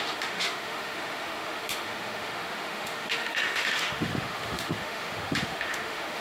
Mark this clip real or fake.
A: fake